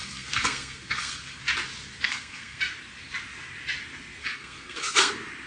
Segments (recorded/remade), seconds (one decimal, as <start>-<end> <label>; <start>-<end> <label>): 0.0-1.4 remade; 1.4-2.0 recorded; 2.0-2.6 remade; 2.6-4.2 recorded; 4.2-5.1 remade; 5.1-5.5 recorded